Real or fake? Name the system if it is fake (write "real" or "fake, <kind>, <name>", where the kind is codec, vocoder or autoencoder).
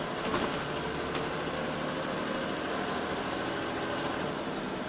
real